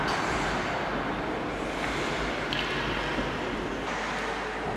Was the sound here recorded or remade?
recorded